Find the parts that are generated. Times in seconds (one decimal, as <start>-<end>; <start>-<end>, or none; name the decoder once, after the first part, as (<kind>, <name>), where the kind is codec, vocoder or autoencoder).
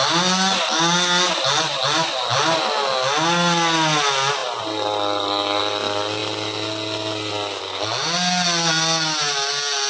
none